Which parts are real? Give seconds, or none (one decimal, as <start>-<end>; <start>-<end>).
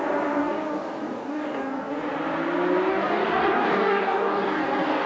0.0-0.4; 2.0-2.9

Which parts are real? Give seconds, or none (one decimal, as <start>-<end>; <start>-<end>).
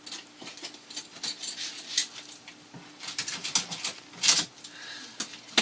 0.0-5.6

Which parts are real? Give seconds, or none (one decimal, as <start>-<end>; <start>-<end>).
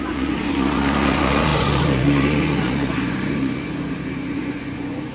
none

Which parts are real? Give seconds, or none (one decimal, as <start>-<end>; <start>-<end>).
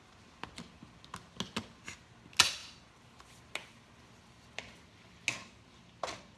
0.0-6.4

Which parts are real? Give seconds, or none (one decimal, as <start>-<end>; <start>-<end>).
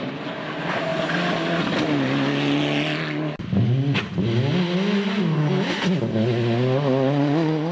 0.0-7.7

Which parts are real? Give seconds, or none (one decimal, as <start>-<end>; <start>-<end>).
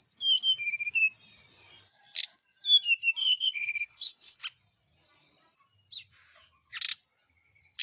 0.0-3.2; 4.4-7.8